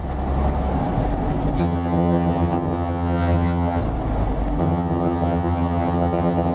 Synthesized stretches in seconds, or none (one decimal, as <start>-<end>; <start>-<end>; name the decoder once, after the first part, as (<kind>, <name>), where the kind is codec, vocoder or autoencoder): 1.6-3.8 (vocoder, HiFi-GAN); 4.6-6.5